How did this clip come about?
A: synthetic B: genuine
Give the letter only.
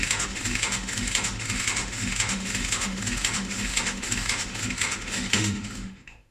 A